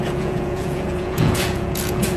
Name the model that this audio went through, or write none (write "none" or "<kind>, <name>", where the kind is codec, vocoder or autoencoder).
vocoder, Vocos